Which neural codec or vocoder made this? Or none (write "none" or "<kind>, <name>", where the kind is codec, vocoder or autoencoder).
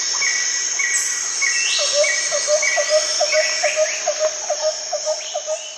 none